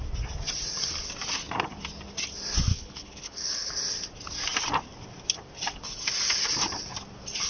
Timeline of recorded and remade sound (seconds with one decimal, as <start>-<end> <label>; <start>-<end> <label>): 0.0-2.7 recorded; 2.7-3.7 remade; 3.7-7.5 recorded